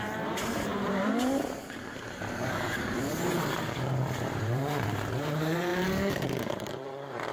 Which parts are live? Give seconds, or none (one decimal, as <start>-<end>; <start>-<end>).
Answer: none